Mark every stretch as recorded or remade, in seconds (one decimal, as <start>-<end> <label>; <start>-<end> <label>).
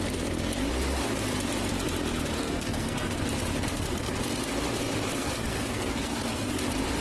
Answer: 0.0-2.4 recorded; 2.4-3.2 remade; 3.2-3.7 recorded; 3.7-4.2 remade; 4.2-5.1 recorded; 5.1-6.6 remade; 6.6-7.0 recorded